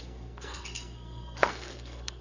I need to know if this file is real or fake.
fake